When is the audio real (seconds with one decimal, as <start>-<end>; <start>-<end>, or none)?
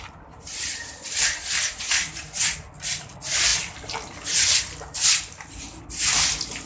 0.0-6.7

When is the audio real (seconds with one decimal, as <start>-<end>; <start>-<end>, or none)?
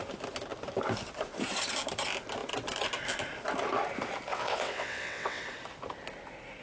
0.0-4.3; 5.4-6.6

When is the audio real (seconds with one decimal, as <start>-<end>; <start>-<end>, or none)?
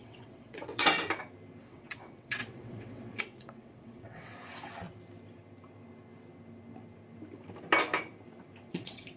0.8-1.6; 4.3-8.7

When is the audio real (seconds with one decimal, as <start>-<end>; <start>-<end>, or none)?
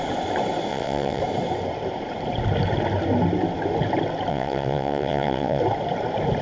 0.0-0.7; 1.2-4.3; 5.6-6.4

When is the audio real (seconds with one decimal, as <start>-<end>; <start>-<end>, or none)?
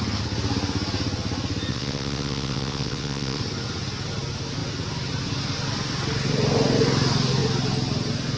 0.0-1.7; 3.4-8.4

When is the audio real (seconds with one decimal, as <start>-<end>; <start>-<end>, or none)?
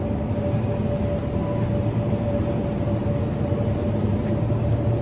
0.0-5.0